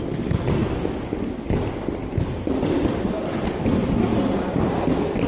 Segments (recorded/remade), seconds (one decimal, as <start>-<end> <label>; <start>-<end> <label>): 0.0-4.1 recorded; 4.1-4.8 remade; 4.8-5.3 recorded